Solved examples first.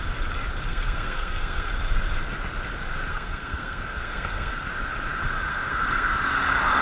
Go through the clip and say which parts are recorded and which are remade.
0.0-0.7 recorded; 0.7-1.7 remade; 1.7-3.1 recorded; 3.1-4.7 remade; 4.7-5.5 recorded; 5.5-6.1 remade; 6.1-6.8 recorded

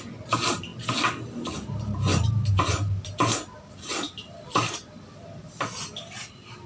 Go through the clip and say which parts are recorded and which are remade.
0.0-6.7 recorded

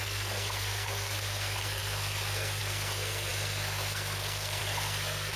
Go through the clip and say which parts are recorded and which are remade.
0.0-5.4 remade

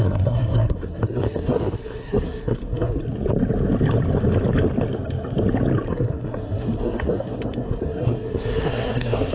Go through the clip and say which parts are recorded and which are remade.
0.0-3.0 remade; 3.0-5.9 recorded; 5.9-9.3 remade

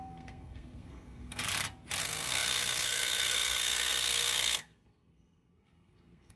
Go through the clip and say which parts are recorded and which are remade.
0.0-1.4 remade; 1.4-2.0 recorded; 2.0-6.4 remade

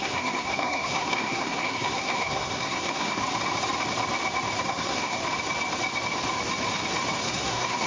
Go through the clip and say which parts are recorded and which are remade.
0.0-3.2 remade; 3.2-4.6 recorded; 4.6-5.2 remade; 5.2-7.2 recorded; 7.2-7.9 remade

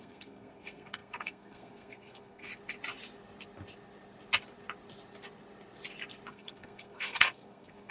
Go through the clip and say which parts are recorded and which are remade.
0.0-2.5 remade; 2.5-6.3 recorded; 6.3-7.9 remade

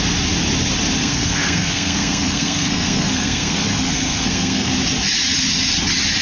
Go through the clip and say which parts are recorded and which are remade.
0.0-1.0 recorded; 1.0-4.7 remade; 4.7-6.2 recorded